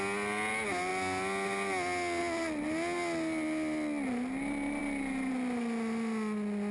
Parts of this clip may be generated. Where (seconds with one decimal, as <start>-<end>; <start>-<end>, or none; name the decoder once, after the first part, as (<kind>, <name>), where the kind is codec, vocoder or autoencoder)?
none